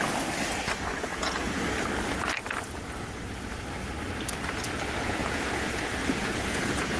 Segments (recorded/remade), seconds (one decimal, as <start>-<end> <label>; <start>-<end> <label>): 0.0-1.1 recorded; 1.1-1.6 remade; 1.6-5.2 recorded; 5.2-7.0 remade